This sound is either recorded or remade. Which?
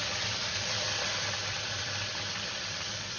remade